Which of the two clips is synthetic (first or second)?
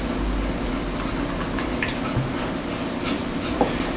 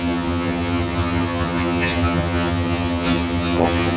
second